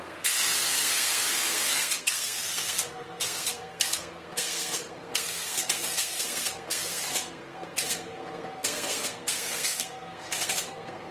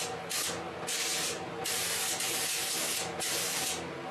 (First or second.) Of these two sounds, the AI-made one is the first